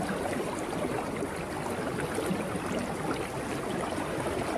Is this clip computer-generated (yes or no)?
no